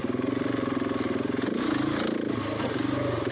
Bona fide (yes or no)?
yes